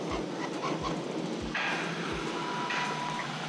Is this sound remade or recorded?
recorded